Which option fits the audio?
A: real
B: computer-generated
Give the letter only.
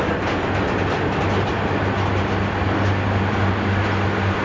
A